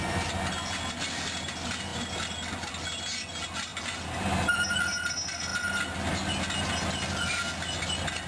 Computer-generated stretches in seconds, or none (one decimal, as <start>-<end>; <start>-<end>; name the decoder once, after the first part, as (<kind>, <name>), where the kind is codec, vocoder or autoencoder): none